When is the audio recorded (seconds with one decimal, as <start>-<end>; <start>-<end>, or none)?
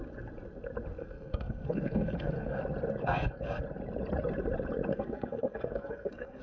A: 0.0-1.0; 2.6-3.0; 3.6-4.9